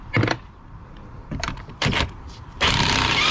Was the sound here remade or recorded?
remade